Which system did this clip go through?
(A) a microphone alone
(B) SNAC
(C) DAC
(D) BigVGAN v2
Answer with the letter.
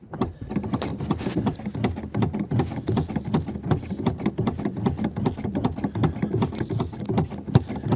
A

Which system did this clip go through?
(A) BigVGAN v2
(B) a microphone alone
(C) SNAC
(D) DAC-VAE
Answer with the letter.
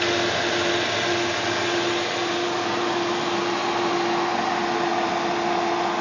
B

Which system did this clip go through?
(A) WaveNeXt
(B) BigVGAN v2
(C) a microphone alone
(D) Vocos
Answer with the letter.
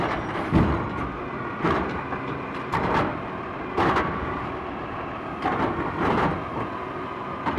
C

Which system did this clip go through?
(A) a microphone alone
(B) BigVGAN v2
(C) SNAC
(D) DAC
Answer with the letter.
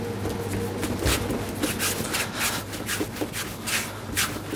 A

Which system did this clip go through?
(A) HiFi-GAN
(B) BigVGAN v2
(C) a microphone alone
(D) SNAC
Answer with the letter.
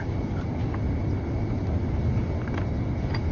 C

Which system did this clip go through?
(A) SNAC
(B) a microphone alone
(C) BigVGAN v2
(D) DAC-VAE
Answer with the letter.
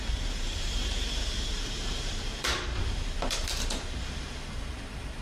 C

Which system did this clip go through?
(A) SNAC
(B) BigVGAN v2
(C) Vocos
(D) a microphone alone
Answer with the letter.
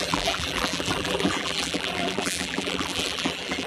B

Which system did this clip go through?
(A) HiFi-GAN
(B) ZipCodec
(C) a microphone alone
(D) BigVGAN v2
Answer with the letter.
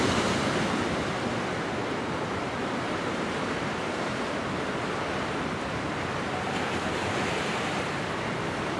D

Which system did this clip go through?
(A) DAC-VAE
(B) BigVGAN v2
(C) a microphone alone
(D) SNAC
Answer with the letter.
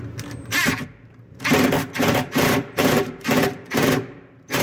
B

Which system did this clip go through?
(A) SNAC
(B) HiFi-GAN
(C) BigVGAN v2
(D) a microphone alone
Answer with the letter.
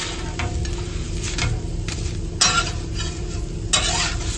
D